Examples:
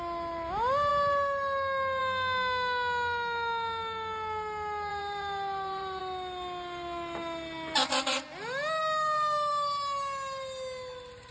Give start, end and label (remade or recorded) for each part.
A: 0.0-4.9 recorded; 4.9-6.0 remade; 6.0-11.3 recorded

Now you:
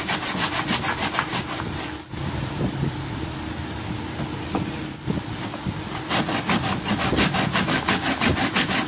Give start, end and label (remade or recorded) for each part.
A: 0.0-2.2 recorded; 2.2-2.9 remade; 2.9-8.9 recorded

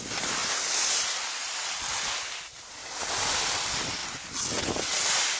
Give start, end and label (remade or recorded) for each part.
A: 0.0-4.0 remade; 4.0-4.7 recorded; 4.7-5.4 remade

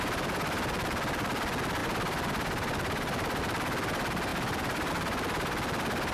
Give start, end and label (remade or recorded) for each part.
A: 0.0-1.8 recorded; 1.8-3.4 remade; 3.4-4.3 recorded; 4.3-4.9 remade; 4.9-6.1 recorded